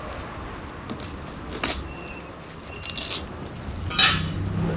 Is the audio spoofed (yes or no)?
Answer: no